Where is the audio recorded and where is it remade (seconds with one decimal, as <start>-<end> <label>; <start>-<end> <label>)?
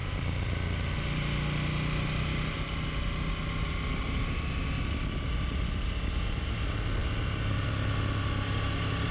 0.0-9.1 recorded